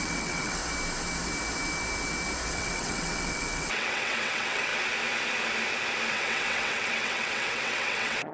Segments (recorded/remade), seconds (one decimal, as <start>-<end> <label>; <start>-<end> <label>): 0.0-0.6 remade; 0.6-2.5 recorded; 2.5-4.7 remade; 4.7-6.1 recorded; 6.1-8.3 remade